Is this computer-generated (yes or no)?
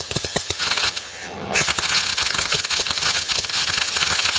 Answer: yes